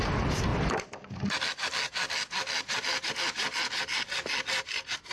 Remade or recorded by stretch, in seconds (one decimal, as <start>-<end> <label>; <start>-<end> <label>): 0.0-5.1 recorded